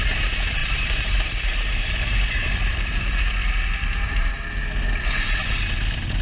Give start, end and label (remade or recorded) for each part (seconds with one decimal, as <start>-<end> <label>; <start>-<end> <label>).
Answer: 0.0-0.6 recorded; 0.6-4.3 remade; 4.3-6.2 recorded